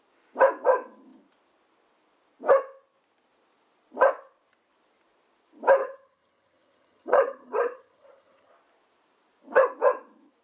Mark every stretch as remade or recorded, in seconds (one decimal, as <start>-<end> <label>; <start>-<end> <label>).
0.0-5.8 recorded; 5.8-8.5 remade; 8.5-10.4 recorded